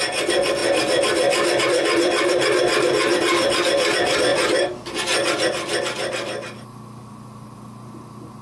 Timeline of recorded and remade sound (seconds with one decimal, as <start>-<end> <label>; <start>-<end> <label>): 0.0-0.6 recorded; 0.6-1.6 remade; 1.6-4.3 recorded; 4.3-4.9 remade; 4.9-8.4 recorded